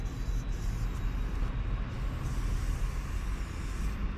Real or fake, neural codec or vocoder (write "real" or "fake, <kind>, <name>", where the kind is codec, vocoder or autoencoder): real